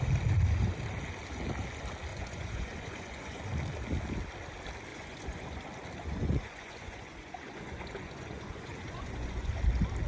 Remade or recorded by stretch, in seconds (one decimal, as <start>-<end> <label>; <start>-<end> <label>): 0.0-2.1 recorded; 2.1-3.4 remade; 3.4-4.9 recorded; 4.9-5.6 remade; 5.6-6.0 recorded; 6.0-9.5 remade; 9.5-10.1 recorded